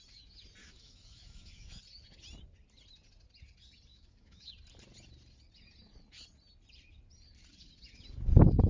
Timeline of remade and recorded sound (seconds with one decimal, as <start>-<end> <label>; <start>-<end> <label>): 0.0-0.6 recorded; 0.6-1.8 remade; 1.8-3.9 recorded; 3.9-4.5 remade; 4.5-8.7 recorded